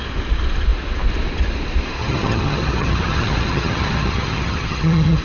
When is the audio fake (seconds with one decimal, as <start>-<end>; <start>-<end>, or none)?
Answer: 2.0-5.2